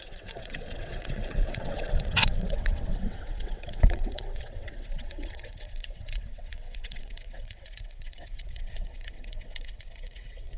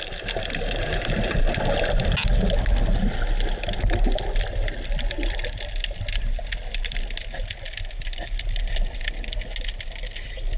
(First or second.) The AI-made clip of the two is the first